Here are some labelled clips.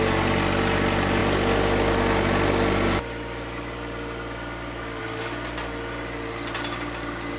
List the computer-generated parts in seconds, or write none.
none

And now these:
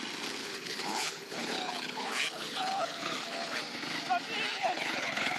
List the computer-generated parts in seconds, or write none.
0.4-3.6 (codec, HILCodec); 4.5-5.4

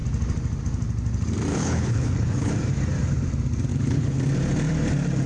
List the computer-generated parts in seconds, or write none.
1.5-2.5 (codec, HILCodec); 3.7-4.2

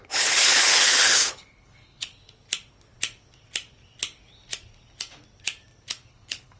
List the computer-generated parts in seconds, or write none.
0.0-2.1 (codec, HILCodec); 6.1-6.6

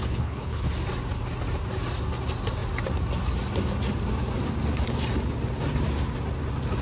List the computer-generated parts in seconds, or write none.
0.0-0.7 (codec, HILCodec)

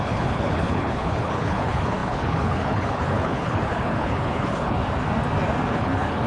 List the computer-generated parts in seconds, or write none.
0.0-4.8 (codec, HILCodec); 5.7-6.3